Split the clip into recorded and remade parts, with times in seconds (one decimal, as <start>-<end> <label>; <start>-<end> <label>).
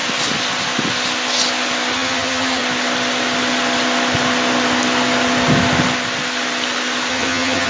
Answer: 0.0-1.9 recorded; 1.9-2.6 remade; 2.6-7.1 recorded; 7.1-7.7 remade